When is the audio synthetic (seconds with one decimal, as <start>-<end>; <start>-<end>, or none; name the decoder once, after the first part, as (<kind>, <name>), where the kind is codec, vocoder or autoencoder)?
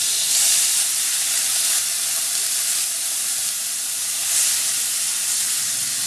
0.0-3.4 (vocoder, BigVGAN v2); 5.4-6.1